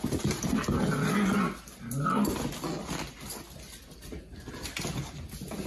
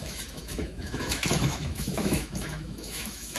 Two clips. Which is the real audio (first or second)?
first